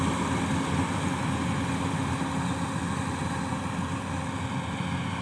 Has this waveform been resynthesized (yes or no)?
no